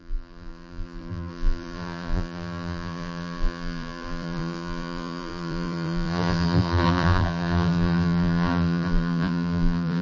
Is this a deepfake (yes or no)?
yes